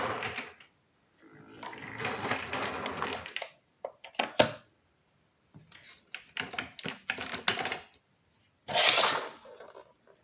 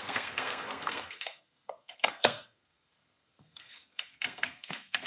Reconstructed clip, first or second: second